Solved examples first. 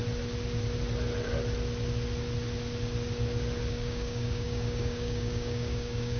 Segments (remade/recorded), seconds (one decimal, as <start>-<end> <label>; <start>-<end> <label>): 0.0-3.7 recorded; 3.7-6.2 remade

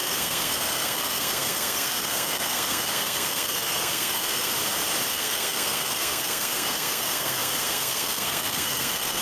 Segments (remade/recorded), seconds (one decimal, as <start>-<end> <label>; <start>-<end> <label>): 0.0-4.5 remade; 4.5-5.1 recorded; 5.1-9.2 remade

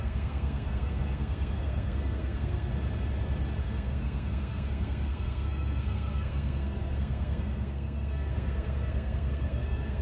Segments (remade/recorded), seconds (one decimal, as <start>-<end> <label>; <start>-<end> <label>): 0.0-2.7 remade; 2.7-3.6 recorded; 3.6-10.0 remade

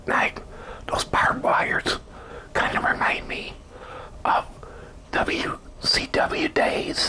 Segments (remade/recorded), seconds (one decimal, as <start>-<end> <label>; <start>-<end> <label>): 0.0-1.5 recorded; 1.5-2.3 remade; 2.3-2.7 recorded; 2.7-4.0 remade; 4.0-5.0 recorded; 5.0-6.0 remade; 6.0-7.1 recorded

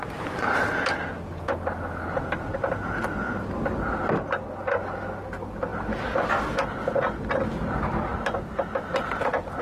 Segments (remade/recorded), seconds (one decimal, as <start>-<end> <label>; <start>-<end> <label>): 0.0-9.6 recorded

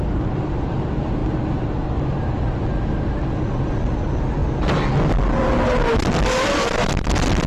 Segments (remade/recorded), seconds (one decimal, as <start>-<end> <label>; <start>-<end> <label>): 0.0-7.5 recorded